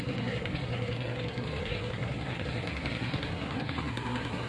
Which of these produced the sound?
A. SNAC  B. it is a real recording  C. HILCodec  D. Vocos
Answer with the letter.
A